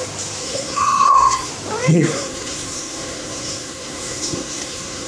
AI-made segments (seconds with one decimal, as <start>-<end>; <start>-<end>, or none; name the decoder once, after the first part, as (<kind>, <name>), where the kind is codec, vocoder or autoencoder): 0.4-1.5 (codec, SNAC); 1.9-5.1